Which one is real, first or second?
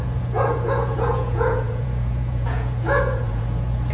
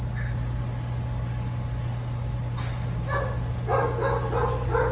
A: second